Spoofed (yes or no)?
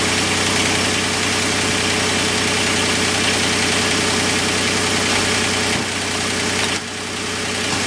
no